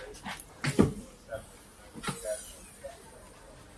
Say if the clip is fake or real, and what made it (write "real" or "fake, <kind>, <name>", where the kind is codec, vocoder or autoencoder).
real